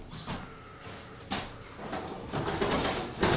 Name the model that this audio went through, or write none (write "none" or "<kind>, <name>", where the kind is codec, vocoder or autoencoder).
none